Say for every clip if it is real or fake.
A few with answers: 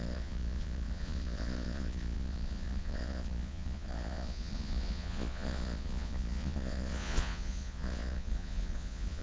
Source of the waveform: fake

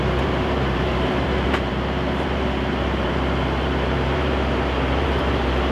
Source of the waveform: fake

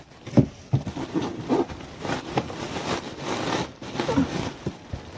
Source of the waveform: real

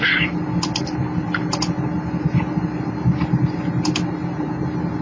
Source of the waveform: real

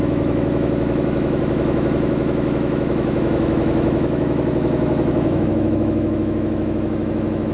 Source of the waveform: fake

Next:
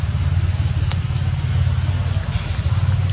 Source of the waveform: real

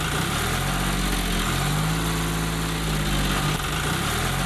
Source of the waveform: real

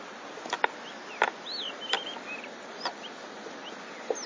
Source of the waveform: real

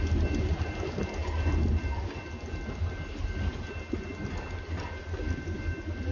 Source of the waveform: real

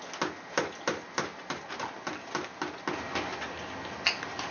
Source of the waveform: real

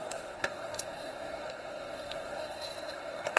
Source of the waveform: fake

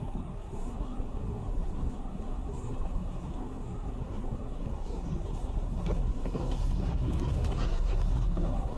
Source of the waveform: fake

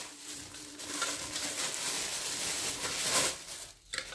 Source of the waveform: real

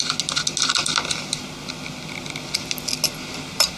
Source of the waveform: real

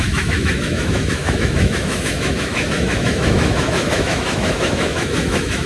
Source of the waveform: fake